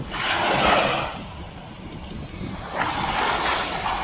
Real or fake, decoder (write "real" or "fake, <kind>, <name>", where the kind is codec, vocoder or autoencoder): real